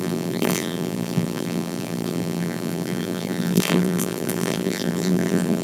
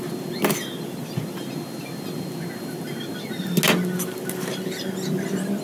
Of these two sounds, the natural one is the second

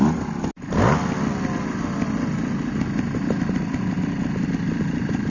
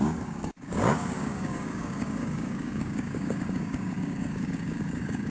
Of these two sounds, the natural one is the first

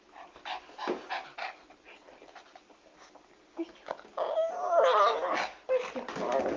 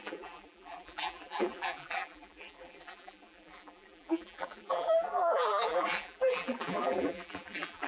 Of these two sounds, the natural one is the first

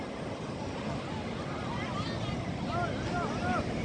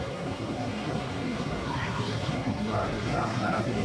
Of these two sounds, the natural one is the first